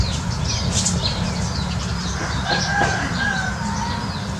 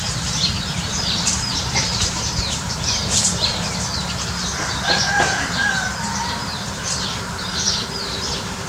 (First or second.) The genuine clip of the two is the first